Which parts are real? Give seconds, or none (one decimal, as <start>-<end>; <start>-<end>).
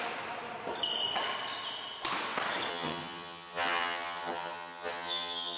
0.0-2.7